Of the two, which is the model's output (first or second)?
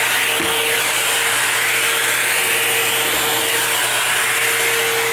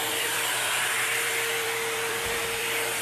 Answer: second